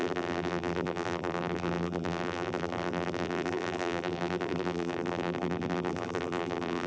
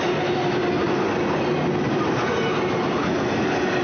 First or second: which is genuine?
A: second